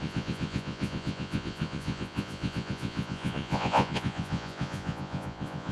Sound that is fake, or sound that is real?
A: fake